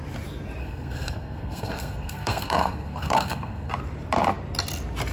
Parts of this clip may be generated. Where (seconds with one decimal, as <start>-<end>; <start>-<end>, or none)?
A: 0.6-3.7